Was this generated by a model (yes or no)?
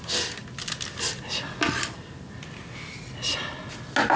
no